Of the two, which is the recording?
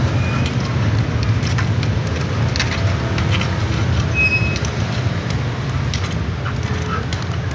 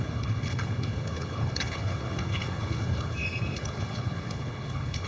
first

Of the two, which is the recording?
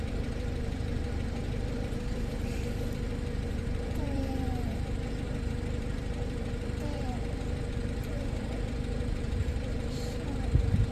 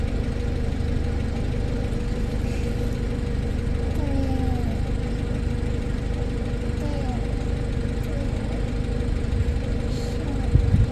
second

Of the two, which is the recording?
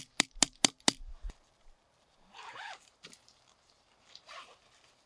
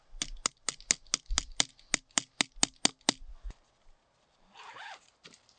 second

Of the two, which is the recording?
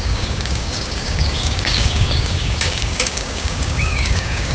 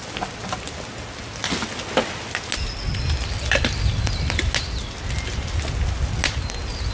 second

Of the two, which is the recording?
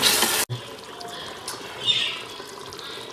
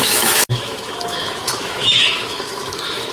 first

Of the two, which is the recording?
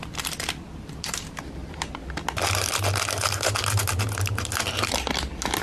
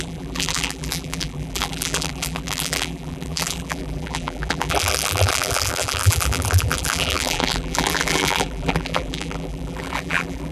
first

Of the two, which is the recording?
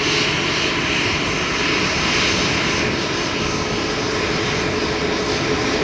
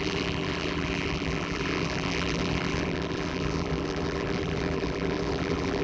first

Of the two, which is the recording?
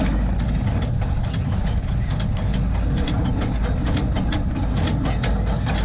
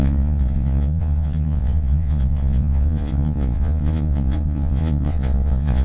first